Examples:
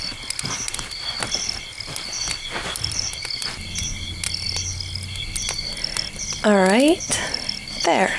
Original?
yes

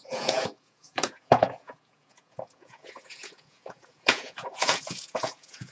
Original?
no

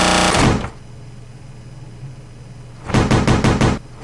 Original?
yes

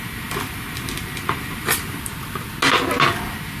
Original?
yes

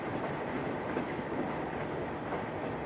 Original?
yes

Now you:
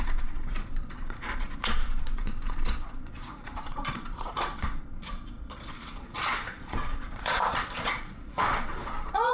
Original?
no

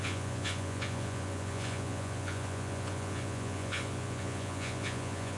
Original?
no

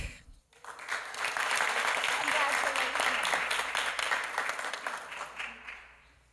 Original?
yes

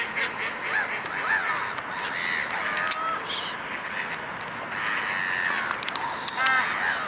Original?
yes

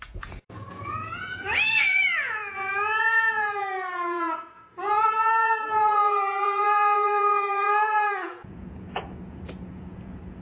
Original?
no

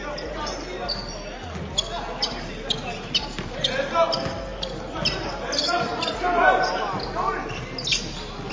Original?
yes